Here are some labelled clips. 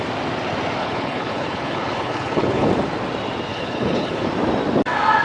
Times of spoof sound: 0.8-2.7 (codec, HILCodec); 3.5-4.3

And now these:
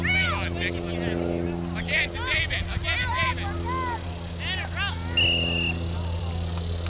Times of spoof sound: none

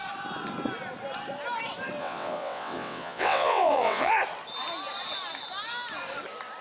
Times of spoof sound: 2.0-4.1 (vocoder, WaveNeXt)

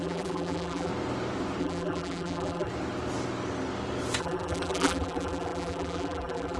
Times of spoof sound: 0.0-0.9 (vocoder, BigVGAN v2); 1.6-2.7; 4.2-6.6

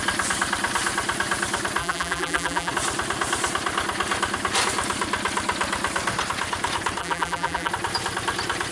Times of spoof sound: 1.8-2.7 (vocoder, BigVGAN v2); 7.0-7.7